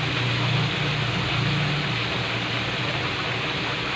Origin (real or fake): real